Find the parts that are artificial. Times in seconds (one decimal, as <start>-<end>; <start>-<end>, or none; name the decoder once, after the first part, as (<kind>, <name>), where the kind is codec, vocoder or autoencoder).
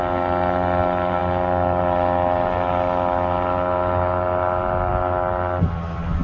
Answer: none